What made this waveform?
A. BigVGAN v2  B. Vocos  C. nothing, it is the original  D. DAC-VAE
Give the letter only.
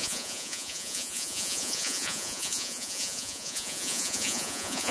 B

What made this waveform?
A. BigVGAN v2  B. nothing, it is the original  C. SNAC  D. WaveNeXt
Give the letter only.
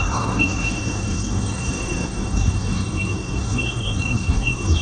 C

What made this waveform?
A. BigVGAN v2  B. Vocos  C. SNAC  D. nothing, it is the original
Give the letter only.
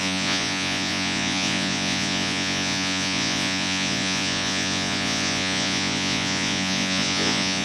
B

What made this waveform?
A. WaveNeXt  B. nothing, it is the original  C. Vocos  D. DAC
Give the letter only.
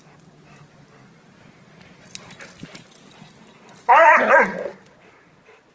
B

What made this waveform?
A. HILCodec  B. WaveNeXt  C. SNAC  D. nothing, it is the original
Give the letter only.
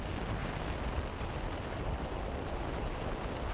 D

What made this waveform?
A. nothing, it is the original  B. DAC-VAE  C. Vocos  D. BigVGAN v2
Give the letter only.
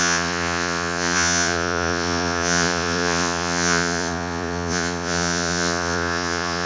C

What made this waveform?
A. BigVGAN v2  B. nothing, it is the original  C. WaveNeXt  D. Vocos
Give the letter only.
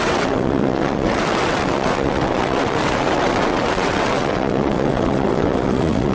C